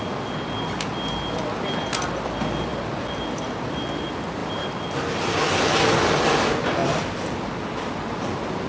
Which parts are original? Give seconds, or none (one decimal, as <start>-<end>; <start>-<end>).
0.0-8.7